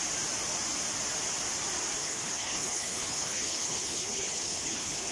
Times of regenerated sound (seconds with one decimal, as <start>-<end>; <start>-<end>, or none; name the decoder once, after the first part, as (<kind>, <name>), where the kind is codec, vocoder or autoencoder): 2.0-5.1 (codec, HILCodec)